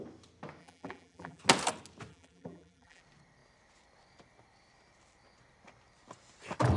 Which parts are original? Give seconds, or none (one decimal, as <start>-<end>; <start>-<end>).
0.0-0.6; 1.4-2.1; 3.0-6.8

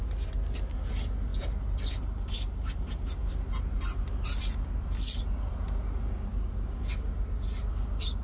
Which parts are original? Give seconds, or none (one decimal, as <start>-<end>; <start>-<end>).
0.0-6.3; 6.8-8.2